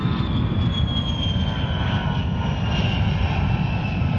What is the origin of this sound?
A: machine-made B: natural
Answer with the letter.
B